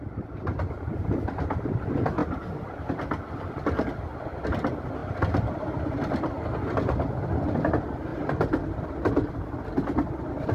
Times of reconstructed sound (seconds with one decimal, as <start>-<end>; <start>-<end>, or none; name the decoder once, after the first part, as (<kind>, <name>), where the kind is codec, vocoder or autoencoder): none